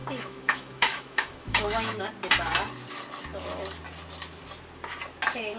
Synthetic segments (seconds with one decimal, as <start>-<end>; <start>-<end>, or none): 0.0-2.0